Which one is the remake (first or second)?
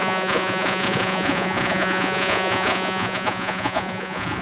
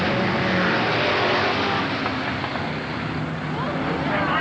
first